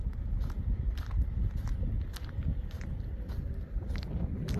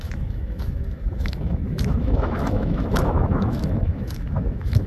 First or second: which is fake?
second